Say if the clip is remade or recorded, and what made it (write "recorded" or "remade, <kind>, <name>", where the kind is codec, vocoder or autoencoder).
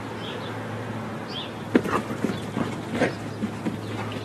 recorded